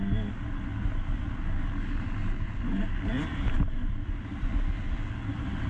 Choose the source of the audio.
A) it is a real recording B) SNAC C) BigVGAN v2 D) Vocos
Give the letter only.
A